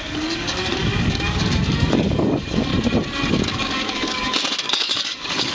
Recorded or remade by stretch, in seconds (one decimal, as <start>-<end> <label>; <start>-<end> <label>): 0.0-2.7 remade; 2.7-3.3 recorded; 3.3-5.5 remade